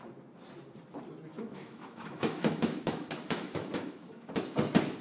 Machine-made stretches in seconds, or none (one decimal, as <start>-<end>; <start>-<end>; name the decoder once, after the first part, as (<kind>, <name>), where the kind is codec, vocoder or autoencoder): 1.3-4.3 (autoencoder, DAC-VAE)